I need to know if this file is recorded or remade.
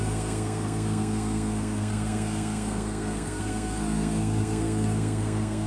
remade